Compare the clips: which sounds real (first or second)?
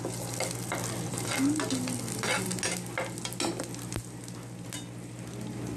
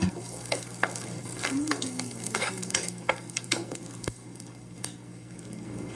first